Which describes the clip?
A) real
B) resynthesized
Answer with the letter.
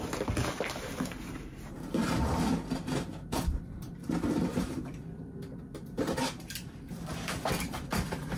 B